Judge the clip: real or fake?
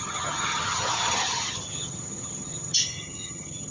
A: fake